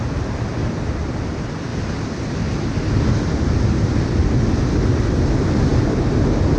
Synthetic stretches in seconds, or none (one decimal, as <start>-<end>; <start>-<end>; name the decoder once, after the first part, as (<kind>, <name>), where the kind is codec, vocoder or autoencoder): none